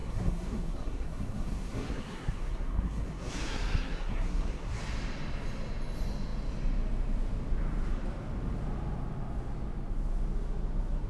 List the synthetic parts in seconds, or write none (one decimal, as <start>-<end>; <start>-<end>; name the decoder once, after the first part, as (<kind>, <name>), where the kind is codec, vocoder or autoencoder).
0.0-4.8 (codec, SNAC)